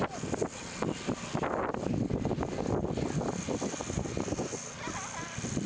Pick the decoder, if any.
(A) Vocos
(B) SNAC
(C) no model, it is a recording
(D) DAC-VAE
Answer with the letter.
C